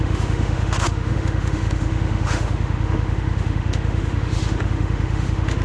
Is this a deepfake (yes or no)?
yes